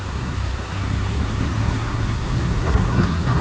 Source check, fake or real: fake